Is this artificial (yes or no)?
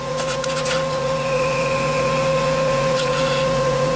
yes